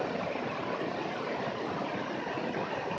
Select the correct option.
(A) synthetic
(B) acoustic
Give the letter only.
B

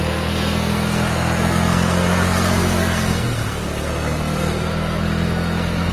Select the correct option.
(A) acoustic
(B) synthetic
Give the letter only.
B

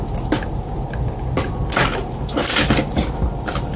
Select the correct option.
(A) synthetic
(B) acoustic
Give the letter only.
B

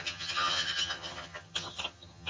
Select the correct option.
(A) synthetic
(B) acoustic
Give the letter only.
A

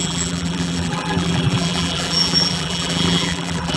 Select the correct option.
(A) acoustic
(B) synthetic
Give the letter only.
B